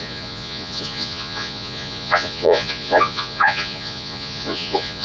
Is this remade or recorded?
remade